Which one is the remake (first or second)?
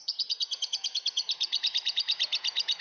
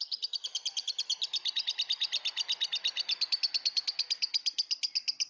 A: first